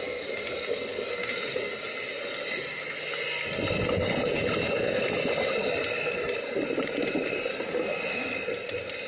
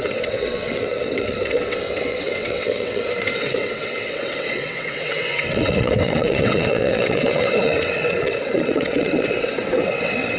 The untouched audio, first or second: first